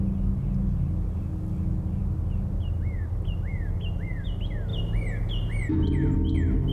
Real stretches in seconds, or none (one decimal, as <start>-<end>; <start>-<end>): 0.0-6.7